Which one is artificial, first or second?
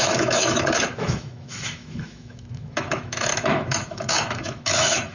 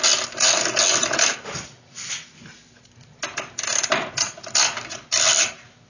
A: first